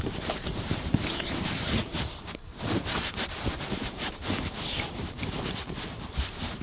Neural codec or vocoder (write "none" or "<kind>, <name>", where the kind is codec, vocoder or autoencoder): vocoder, BigVGAN v2